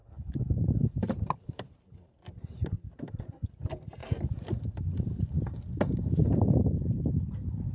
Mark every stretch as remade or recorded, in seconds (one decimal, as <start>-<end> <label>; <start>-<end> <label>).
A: 0.0-3.2 remade; 3.2-4.0 recorded; 4.0-7.1 remade; 7.1-7.7 recorded